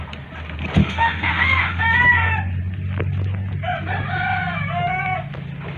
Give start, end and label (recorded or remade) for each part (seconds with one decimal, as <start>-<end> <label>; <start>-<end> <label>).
0.0-0.8 recorded; 0.8-1.8 remade; 1.8-5.8 recorded